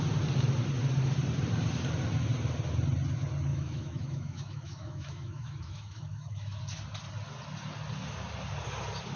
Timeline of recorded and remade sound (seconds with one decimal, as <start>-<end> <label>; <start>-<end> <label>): 0.0-3.5 recorded; 3.5-6.6 remade; 6.6-9.2 recorded